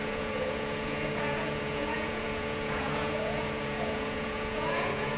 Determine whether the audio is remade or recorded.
remade